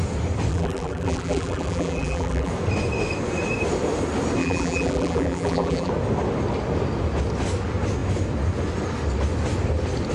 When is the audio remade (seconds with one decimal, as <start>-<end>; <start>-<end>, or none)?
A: 0.5-2.5; 4.4-5.9